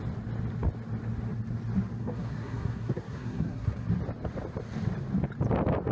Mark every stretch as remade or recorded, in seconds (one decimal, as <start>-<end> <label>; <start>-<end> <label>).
0.0-2.0 recorded; 2.0-3.9 remade; 3.9-5.9 recorded